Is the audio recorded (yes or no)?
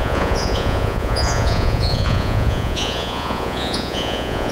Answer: no